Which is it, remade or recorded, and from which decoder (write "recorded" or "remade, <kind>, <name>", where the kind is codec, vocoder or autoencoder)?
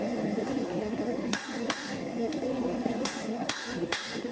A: remade, codec, SNAC